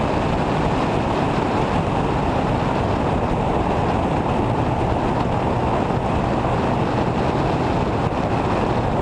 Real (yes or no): yes